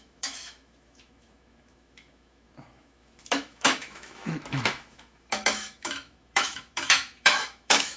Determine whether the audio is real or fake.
fake